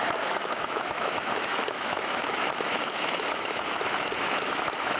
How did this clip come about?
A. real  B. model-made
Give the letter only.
B